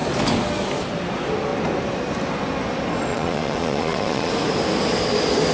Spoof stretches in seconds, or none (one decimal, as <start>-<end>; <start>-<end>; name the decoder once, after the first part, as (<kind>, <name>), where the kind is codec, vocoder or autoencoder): 3.1-4.3 (vocoder, Vocos)